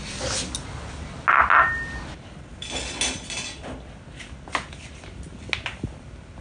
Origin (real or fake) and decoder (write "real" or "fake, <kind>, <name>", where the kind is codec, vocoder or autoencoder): real